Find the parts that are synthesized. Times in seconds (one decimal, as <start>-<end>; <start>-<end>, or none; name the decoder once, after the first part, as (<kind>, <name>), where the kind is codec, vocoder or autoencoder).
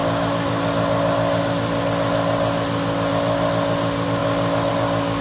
none